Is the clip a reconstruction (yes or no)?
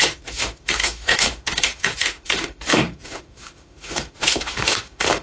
yes